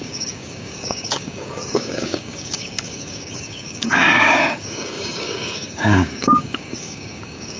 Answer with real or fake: fake